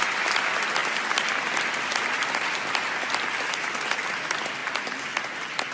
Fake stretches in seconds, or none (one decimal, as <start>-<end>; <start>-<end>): none